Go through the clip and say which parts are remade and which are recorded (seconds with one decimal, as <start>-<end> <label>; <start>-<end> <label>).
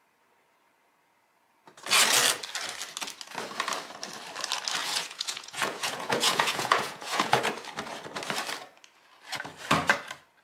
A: 0.0-4.8 recorded; 4.8-7.4 remade; 7.4-10.4 recorded